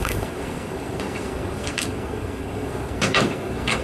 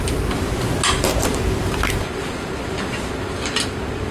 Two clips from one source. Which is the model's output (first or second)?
first